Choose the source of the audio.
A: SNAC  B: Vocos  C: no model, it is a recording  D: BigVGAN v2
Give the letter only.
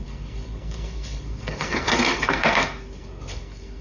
A